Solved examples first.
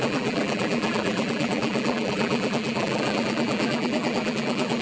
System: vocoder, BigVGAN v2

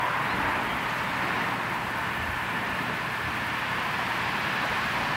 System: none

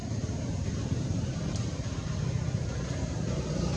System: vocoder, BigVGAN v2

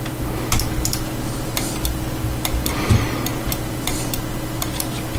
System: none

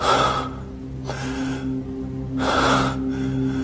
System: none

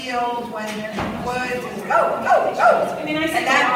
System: vocoder, BigVGAN v2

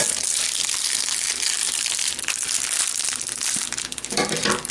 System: none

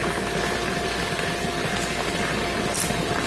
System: none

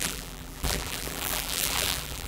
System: vocoder, BigVGAN v2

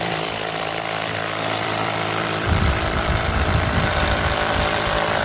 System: vocoder, BigVGAN v2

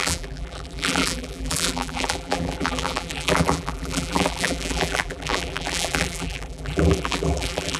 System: vocoder, BigVGAN v2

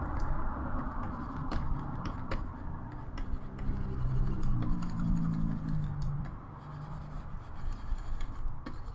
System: vocoder, BigVGAN v2